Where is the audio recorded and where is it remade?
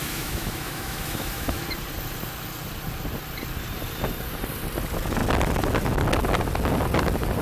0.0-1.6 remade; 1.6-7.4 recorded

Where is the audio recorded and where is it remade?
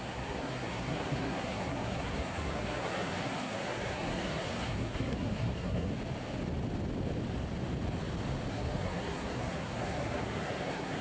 0.0-5.9 remade; 5.9-8.5 recorded; 8.5-11.0 remade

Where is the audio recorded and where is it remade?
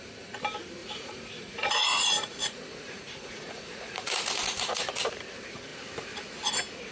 0.0-0.8 recorded; 0.8-4.9 remade; 4.9-6.9 recorded